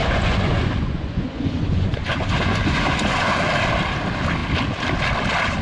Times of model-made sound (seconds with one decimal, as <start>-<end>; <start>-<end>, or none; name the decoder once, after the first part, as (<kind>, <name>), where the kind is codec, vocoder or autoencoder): 0.0-3.4 (vocoder, Vocos)